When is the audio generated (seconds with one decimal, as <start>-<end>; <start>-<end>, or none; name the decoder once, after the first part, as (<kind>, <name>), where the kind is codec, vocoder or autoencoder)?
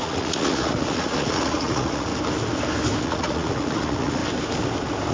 0.0-2.1 (vocoder, Vocos); 3.0-4.2